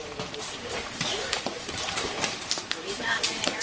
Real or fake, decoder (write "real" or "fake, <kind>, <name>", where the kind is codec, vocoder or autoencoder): fake, vocoder, BigVGAN v2